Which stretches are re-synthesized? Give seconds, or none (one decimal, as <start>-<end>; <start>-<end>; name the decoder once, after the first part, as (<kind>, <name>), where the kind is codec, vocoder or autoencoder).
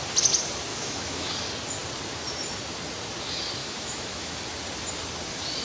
0.7-1.3 (autoencoder, DAC-VAE); 3.6-4.4